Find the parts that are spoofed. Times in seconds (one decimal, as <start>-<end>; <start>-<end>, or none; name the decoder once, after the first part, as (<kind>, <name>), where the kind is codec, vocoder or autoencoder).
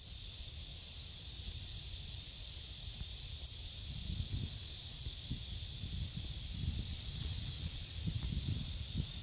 6.9-7.8 (vocoder, WaveNeXt)